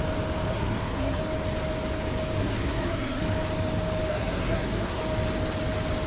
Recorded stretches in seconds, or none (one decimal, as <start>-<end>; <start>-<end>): 0.0-0.5; 1.2-2.4; 3.2-4.1; 5.0-6.1